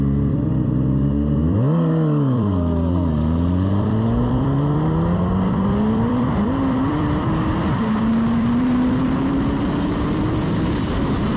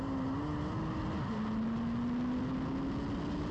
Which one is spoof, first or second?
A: first